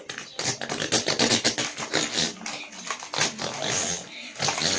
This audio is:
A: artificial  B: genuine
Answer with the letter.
B